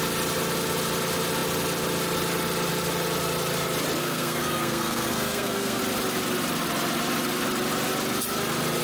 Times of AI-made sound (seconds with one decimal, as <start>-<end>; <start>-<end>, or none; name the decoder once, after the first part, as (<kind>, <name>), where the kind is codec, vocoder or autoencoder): 4.0-5.8 (codec, SNAC)